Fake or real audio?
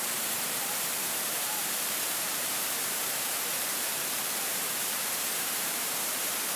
fake